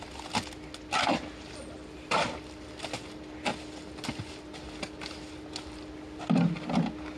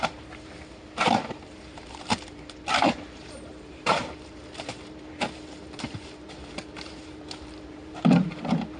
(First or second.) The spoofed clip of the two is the second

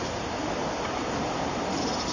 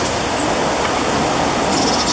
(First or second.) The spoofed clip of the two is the first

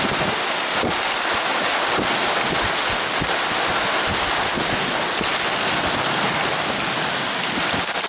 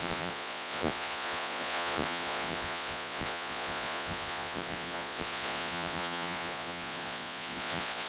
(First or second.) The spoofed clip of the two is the second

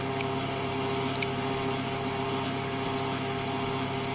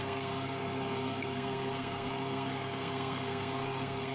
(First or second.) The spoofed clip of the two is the second